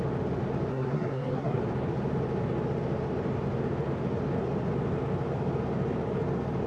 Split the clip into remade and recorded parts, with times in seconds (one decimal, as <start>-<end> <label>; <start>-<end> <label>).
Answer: 0.0-0.7 recorded; 0.7-1.6 remade; 1.6-6.7 recorded